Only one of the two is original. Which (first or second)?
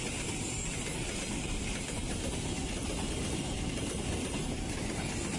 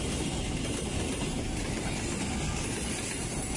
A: second